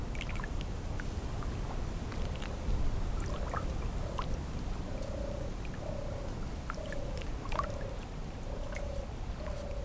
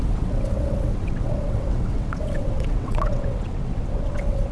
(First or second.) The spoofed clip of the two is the second